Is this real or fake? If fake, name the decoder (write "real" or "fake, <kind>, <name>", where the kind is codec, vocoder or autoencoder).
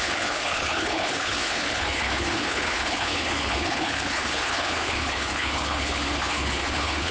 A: fake, codec, HILCodec